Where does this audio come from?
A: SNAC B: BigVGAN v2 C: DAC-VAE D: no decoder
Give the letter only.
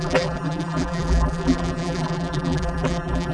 B